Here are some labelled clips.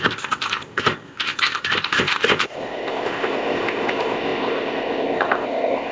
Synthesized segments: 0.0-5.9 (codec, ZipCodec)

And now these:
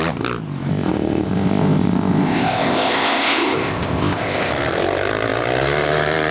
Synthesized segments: 0.7-4.5 (codec, ZipCodec)

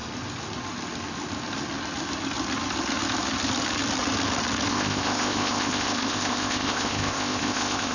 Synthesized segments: 4.7-7.9 (codec, ZipCodec)